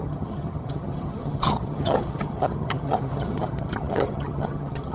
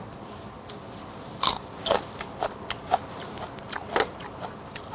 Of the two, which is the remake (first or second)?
first